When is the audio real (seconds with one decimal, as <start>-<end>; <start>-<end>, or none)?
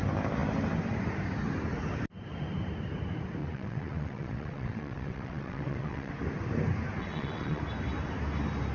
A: 0.0-3.4; 6.1-7.0; 7.6-8.7